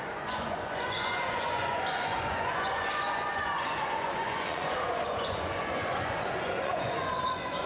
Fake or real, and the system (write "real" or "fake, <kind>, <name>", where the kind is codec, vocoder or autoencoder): fake, vocoder, Vocos